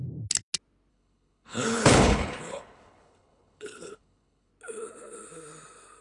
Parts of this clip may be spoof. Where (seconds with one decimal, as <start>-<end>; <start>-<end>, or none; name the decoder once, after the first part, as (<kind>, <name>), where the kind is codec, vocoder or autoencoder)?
0.9-4.5 (codec, HILCodec)